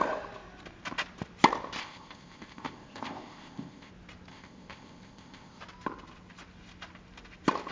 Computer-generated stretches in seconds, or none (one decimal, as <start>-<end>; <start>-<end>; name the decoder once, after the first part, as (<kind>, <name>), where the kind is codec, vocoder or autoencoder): 1.8-3.9 (codec, ZipCodec); 4.3-5.6